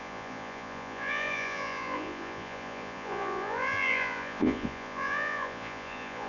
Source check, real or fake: fake